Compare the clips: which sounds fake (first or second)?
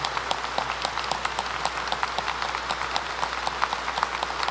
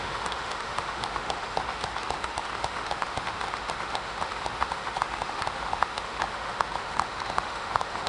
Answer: second